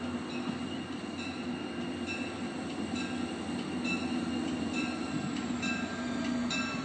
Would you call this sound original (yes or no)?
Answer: yes